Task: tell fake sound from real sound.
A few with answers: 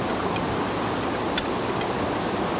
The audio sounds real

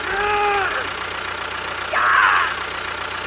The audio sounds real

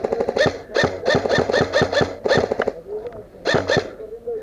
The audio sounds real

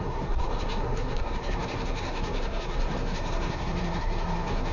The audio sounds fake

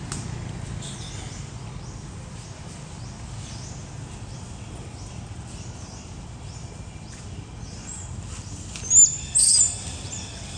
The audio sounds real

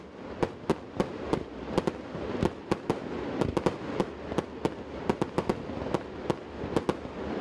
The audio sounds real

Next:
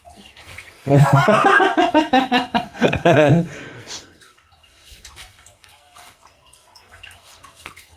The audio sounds fake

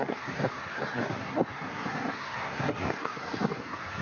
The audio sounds fake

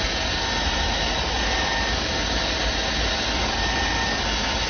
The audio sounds real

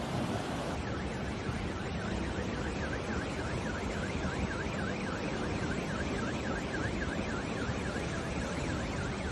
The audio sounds real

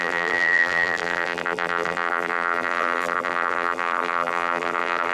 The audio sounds fake